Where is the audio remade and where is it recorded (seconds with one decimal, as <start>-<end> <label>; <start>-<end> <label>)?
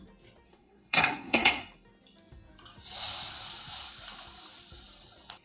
0.0-0.5 recorded; 0.5-1.6 remade; 1.6-5.4 recorded